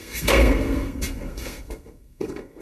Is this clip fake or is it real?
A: fake